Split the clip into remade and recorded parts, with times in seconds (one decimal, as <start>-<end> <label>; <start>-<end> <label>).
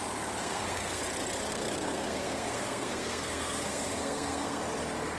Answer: 0.0-0.4 recorded; 0.4-1.0 remade; 1.0-1.5 recorded; 1.5-4.6 remade; 4.6-5.2 recorded